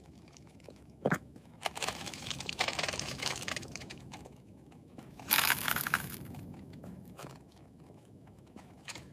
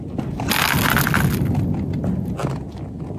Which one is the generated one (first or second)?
first